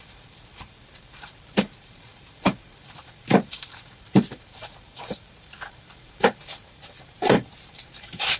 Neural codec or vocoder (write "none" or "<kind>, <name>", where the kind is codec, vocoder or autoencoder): vocoder, BigVGAN v2